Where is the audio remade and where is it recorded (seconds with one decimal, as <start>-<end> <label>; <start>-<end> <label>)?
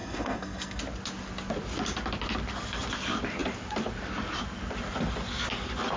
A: 0.0-0.8 remade; 0.8-6.0 recorded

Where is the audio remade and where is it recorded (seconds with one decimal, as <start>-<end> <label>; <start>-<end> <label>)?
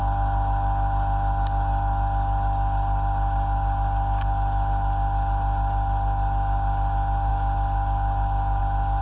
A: 0.0-9.0 recorded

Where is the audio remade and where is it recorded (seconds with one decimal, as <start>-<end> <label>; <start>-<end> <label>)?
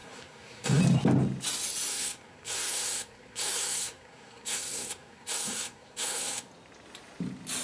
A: 0.0-0.8 remade; 0.8-1.9 recorded; 1.9-6.5 remade; 6.5-7.6 recorded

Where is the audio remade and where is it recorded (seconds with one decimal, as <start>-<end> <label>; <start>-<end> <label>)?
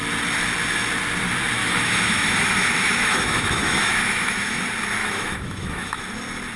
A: 0.0-1.6 recorded; 1.6-4.6 remade; 4.6-5.0 recorded; 5.0-6.0 remade; 6.0-6.6 recorded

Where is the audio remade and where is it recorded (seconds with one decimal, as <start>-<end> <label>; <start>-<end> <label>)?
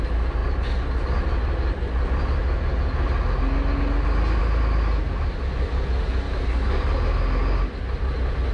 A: 0.0-8.5 recorded